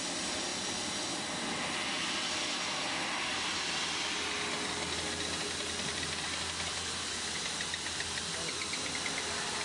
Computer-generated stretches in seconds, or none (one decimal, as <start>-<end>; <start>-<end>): none